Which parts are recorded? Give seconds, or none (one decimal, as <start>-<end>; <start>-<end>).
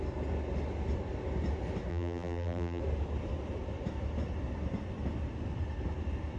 0.0-1.9; 2.8-6.4